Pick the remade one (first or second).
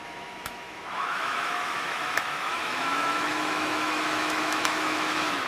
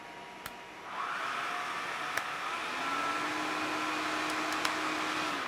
first